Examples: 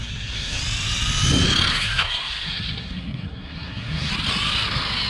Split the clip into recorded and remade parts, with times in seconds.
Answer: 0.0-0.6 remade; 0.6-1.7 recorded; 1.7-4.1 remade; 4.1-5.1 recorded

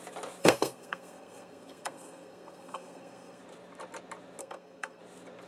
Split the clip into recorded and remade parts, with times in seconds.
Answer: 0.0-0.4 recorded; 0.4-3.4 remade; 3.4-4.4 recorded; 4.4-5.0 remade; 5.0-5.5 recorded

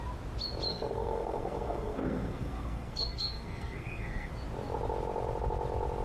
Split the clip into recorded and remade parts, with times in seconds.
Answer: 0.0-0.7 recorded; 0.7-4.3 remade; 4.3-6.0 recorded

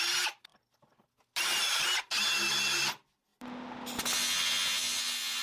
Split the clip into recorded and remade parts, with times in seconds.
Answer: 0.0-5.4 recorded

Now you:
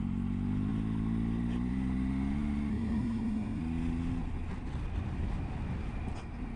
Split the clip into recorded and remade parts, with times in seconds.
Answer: 0.0-2.7 recorded; 2.7-3.6 remade; 3.6-6.6 recorded

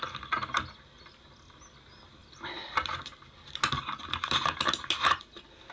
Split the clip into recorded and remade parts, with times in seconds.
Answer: 0.0-5.7 recorded

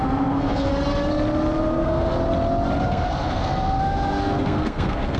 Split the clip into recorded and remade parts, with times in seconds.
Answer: 0.0-0.7 remade; 0.7-1.7 recorded; 1.7-2.1 remade; 2.1-2.8 recorded; 2.8-5.2 remade